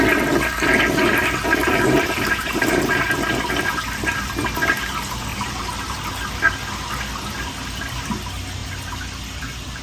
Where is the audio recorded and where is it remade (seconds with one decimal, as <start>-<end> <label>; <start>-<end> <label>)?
0.0-1.6 recorded; 1.6-3.1 remade; 3.1-5.3 recorded; 5.3-6.1 remade; 6.1-9.8 recorded